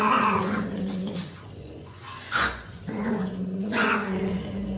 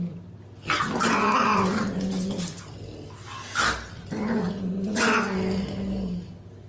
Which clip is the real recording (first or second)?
second